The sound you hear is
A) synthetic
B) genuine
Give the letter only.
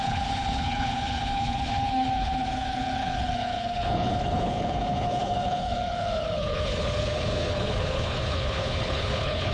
A